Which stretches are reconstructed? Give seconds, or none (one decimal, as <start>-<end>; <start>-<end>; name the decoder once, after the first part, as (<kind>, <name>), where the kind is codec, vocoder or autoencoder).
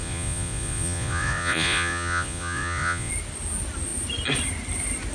0.0-3.1 (vocoder, Vocos)